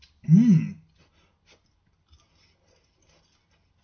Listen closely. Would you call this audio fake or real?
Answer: real